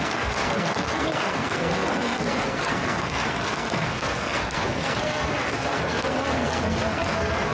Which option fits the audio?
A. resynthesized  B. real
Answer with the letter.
A